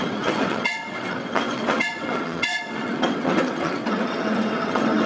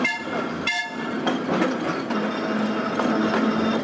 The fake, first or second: first